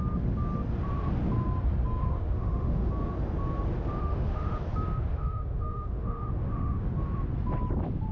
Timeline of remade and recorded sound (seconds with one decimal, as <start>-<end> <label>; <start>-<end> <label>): 0.0-2.1 recorded; 2.1-2.9 remade; 2.9-4.0 recorded; 4.0-4.6 remade; 4.6-5.1 recorded; 5.1-6.9 remade; 6.9-8.1 recorded